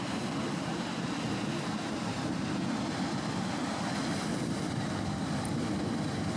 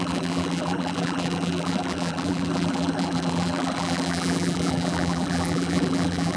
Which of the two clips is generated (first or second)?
second